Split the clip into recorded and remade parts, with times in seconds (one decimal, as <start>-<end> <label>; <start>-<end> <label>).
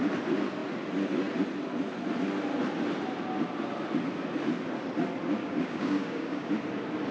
0.0-5.4 recorded; 5.4-6.5 remade; 6.5-7.1 recorded